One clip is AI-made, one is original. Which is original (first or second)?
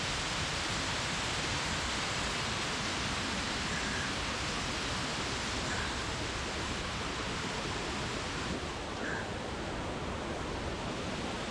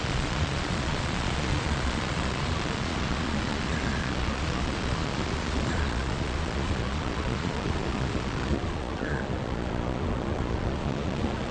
first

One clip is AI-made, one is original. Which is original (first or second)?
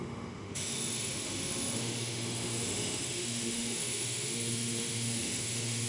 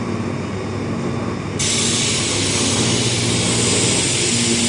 second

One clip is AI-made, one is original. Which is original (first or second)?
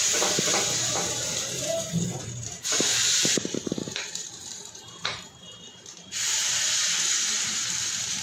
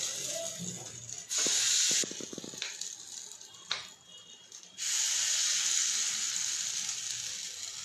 second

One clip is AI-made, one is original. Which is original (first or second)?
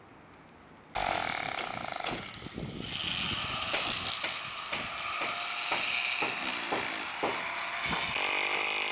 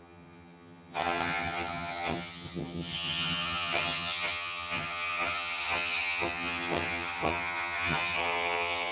first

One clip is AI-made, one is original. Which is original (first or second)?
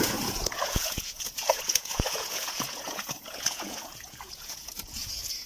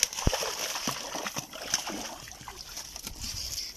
second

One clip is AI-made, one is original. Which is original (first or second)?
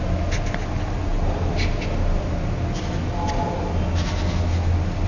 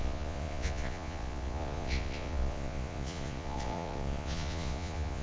first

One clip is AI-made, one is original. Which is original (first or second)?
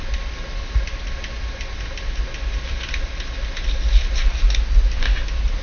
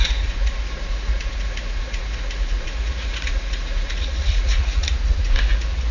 first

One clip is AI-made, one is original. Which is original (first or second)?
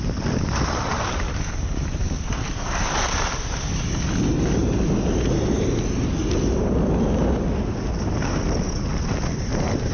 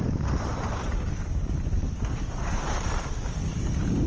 first